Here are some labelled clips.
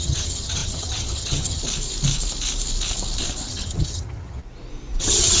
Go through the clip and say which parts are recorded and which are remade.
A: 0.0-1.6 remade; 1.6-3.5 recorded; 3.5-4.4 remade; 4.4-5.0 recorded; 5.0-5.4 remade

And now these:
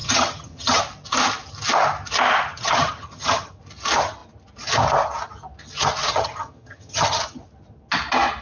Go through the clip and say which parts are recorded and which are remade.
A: 0.0-0.8 remade; 0.8-2.5 recorded; 2.5-3.6 remade; 3.6-6.1 recorded; 6.1-7.2 remade; 7.2-8.4 recorded

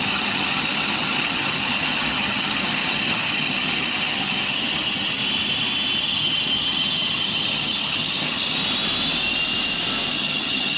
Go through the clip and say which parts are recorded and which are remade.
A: 0.0-5.2 remade; 5.2-6.0 recorded; 6.0-8.6 remade; 8.6-10.1 recorded; 10.1-10.8 remade

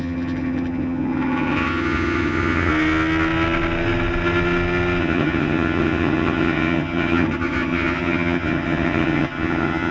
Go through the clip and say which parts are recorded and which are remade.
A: 0.0-2.7 remade; 2.7-5.0 recorded; 5.0-9.9 remade

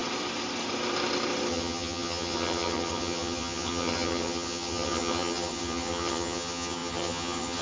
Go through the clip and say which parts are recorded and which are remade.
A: 0.0-1.5 recorded; 1.5-7.6 remade

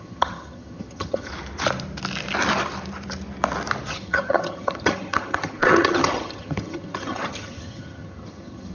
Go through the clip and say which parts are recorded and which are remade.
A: 0.0-1.3 remade; 1.3-3.9 recorded; 3.9-8.7 remade

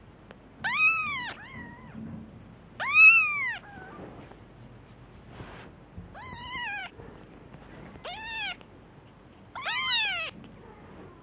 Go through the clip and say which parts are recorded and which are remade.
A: 0.0-11.2 recorded

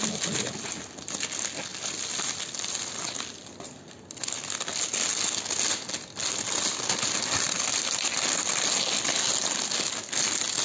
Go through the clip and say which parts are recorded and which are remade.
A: 0.0-10.6 recorded